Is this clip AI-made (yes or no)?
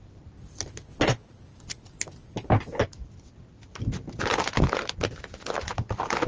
no